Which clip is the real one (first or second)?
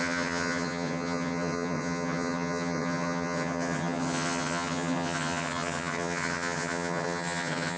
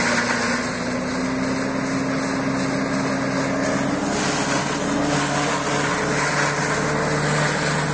second